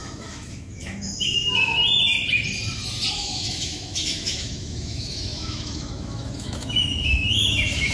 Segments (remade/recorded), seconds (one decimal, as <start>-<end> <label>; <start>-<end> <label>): 0.0-1.8 remade; 1.8-3.1 recorded; 3.1-7.9 remade